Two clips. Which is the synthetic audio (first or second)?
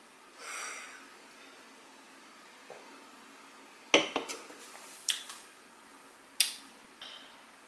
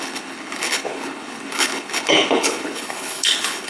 second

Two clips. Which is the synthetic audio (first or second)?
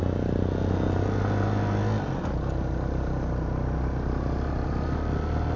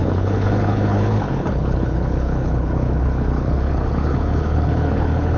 second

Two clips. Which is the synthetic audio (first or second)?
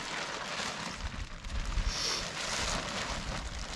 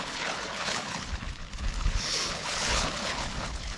second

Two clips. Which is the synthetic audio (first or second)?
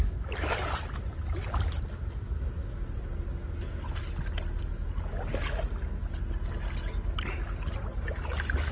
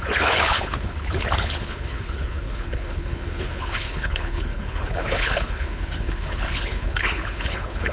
second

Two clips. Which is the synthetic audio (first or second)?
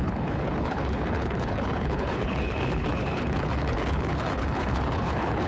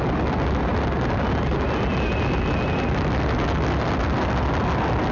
first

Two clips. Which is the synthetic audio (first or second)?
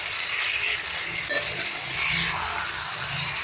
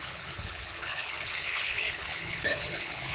second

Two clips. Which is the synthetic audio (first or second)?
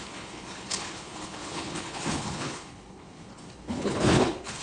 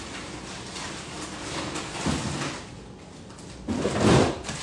first